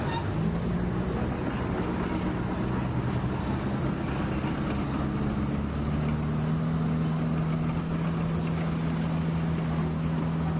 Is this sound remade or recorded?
recorded